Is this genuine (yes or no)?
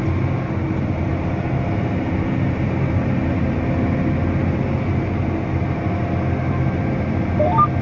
yes